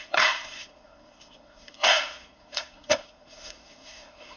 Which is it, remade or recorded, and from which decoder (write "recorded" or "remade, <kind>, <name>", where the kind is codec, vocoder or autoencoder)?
remade, codec, SNAC